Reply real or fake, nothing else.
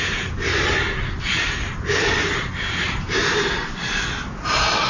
fake